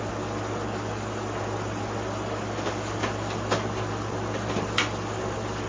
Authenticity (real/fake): real